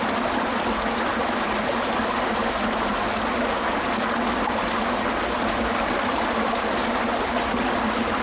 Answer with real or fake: real